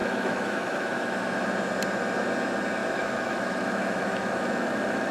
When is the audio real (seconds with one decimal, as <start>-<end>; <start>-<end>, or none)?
1.2-2.8